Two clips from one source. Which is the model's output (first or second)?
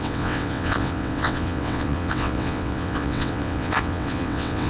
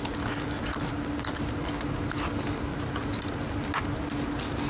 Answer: first